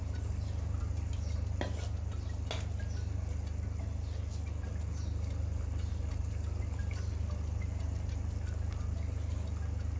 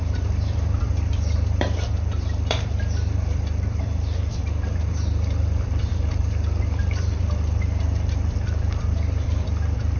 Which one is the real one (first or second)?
first